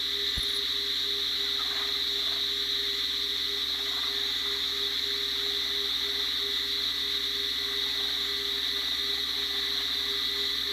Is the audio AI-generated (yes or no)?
no